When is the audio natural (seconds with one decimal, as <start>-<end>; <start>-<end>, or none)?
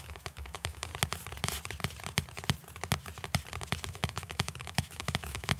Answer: 0.9-3.9